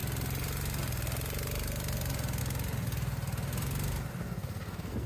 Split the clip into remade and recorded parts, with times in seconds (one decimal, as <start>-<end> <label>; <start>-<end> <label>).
0.0-4.2 recorded; 4.2-5.1 remade